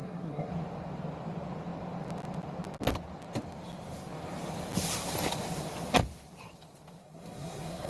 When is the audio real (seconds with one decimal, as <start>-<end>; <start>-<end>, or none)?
0.5-7.0